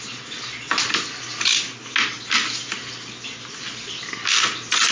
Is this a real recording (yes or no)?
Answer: yes